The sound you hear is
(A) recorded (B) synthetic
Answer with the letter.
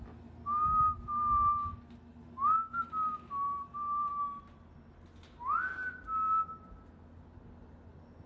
A